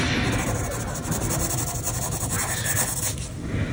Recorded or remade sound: recorded